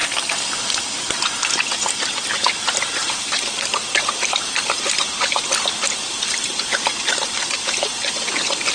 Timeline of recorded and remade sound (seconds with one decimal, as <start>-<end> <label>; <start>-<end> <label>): 0.0-8.7 recorded